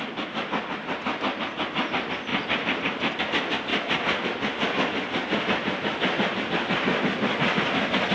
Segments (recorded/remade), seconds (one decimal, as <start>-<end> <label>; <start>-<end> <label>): 0.0-2.3 recorded; 2.3-3.2 remade; 3.2-8.1 recorded